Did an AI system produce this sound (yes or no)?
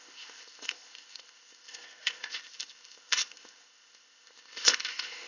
yes